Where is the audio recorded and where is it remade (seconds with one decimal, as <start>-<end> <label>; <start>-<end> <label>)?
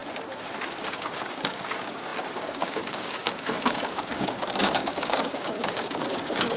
0.0-0.9 recorded; 0.9-6.6 remade